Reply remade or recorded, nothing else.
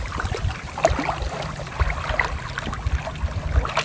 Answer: recorded